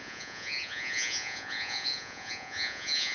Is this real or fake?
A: fake